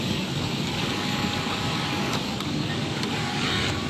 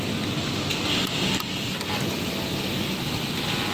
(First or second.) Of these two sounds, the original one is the second